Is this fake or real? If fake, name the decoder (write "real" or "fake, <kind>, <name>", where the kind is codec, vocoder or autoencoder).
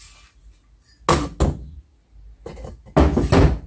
real